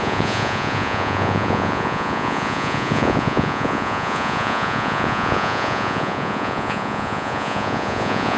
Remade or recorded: remade